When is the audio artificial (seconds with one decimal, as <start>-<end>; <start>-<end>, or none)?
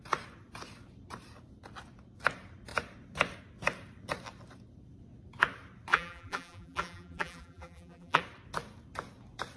5.9-8.2